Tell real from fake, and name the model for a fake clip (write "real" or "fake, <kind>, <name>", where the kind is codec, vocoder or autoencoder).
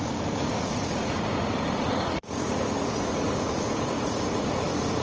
fake, vocoder, Vocos